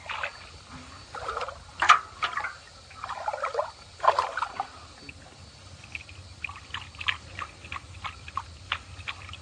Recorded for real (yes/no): yes